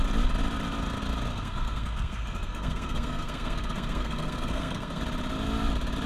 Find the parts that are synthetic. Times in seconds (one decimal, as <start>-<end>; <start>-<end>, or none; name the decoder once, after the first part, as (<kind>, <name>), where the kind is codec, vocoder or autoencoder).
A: 1.3-5.0 (codec, SNAC)